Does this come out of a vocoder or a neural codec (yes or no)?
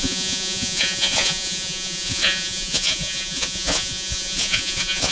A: yes